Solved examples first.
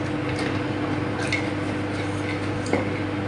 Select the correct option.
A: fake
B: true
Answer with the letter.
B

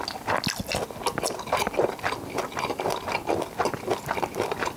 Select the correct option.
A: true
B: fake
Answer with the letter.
A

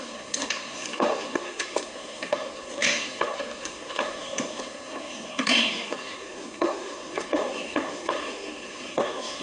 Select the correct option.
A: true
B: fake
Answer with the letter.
B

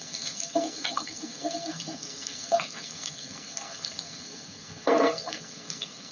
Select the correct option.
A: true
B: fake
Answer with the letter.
B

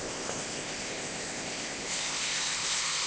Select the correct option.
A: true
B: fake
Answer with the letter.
B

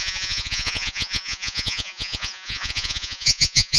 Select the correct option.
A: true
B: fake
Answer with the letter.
B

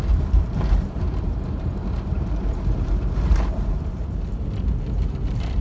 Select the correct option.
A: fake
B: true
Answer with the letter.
A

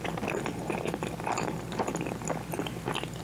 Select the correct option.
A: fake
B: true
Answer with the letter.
B